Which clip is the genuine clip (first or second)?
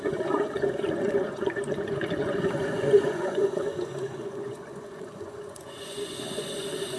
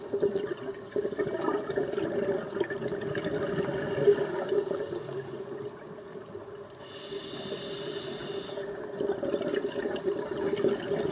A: second